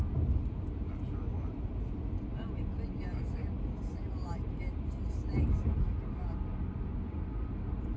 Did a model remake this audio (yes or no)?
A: no